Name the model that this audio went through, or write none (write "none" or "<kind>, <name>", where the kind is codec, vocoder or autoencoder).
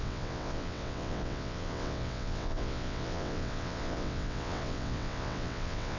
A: vocoder, WaveNeXt